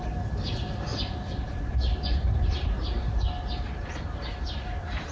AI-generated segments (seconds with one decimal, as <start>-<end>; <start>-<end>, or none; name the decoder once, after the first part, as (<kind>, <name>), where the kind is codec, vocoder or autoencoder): none